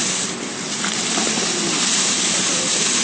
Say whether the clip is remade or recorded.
recorded